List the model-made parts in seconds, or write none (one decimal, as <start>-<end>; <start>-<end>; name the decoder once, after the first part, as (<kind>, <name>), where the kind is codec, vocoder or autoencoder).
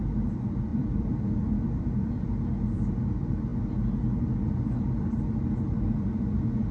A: 0.7-2.1 (vocoder, BigVGAN v2)